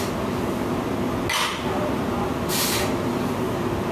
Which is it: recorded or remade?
recorded